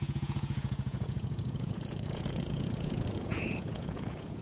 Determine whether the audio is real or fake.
fake